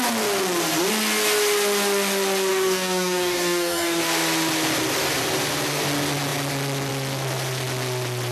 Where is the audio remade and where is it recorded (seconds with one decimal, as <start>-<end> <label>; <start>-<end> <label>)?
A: 0.0-2.5 recorded; 2.5-4.0 remade; 4.0-8.3 recorded

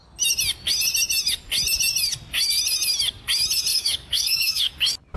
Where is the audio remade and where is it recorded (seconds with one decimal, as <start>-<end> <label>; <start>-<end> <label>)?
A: 0.0-3.7 recorded; 3.7-4.7 remade; 4.7-5.2 recorded